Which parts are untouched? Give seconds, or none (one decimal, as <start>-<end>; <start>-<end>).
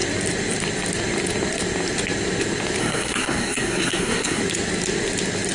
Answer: 0.0-2.8; 4.4-5.5